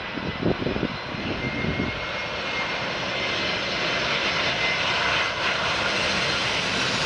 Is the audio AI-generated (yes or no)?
no